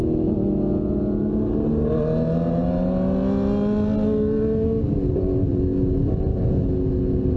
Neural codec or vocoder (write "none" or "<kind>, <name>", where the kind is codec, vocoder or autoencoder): none